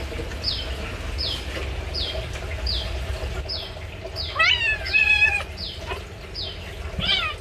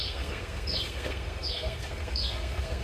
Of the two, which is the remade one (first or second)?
second